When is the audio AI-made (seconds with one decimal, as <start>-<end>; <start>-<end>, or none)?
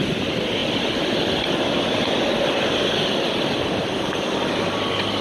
none